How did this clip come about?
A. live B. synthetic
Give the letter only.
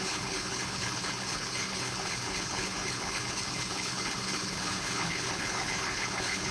B